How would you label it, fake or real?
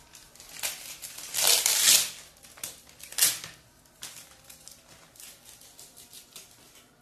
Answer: real